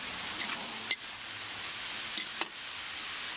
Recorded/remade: recorded